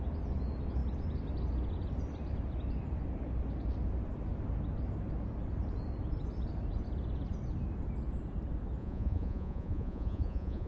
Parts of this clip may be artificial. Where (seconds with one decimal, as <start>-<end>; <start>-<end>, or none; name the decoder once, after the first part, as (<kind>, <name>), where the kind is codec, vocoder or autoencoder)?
8.8-10.7 (vocoder, Vocos)